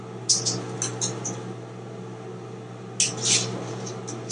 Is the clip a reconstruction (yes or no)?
no